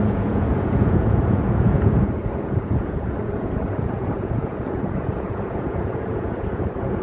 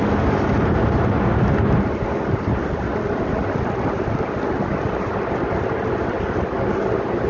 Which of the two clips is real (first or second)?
second